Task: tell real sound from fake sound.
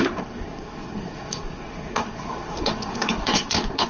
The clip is fake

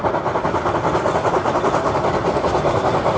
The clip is real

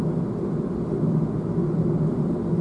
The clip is real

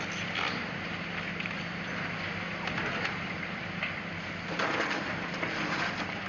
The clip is real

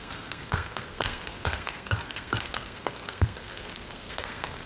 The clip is fake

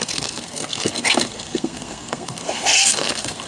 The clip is fake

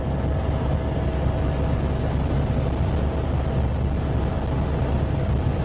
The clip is real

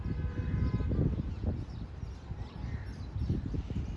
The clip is real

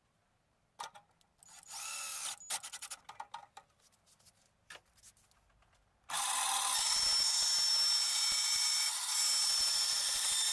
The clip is real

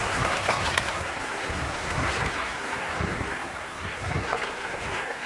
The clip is fake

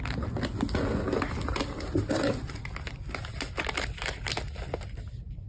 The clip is real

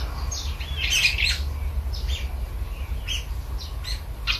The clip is real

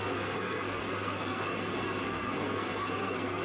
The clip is fake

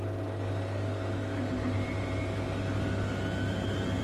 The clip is real